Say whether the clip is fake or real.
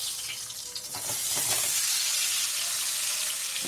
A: real